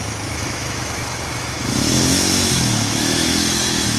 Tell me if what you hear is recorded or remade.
remade